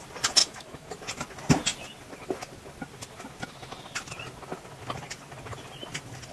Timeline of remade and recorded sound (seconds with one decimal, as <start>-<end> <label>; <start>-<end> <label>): 0.0-0.4 recorded; 0.4-0.9 remade; 0.9-6.3 recorded